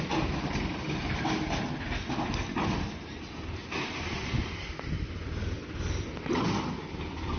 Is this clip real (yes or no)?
yes